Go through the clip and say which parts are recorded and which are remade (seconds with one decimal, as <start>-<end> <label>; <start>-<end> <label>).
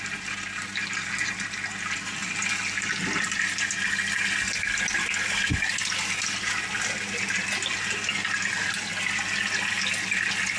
0.0-10.6 recorded